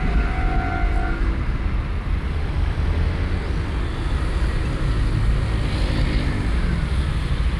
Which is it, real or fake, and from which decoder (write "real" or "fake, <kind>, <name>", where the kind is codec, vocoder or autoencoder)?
real